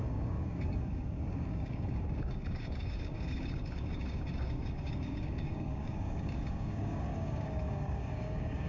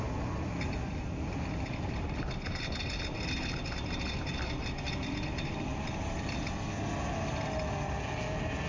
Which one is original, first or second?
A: second